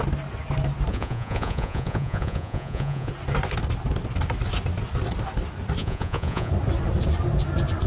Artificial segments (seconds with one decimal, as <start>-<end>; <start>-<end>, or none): 0.9-3.1; 5.8-6.5